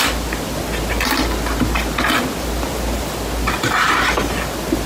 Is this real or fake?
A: real